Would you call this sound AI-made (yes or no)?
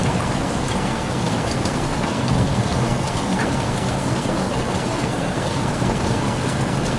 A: yes